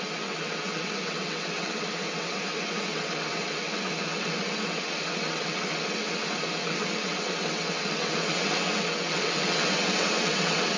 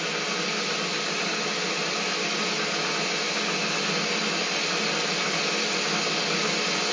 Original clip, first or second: second